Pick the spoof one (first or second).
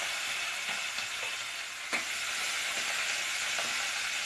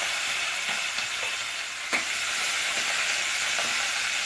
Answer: second